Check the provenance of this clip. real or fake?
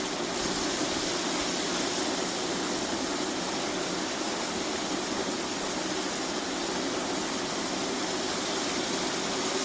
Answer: real